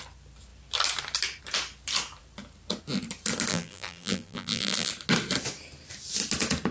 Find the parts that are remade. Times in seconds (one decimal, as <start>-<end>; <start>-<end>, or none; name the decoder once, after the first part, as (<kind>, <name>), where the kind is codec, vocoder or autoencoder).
3.5-4.9 (vocoder, BigVGAN v2)